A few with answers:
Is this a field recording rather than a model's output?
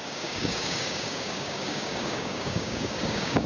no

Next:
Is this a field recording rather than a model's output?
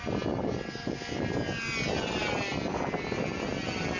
yes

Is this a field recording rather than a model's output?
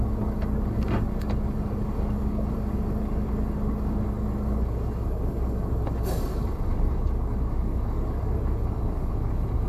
no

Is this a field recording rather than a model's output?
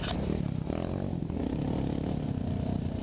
yes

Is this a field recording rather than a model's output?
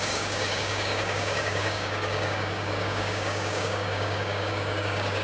no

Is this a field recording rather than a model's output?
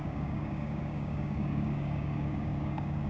no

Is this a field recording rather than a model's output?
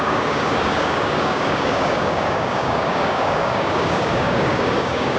no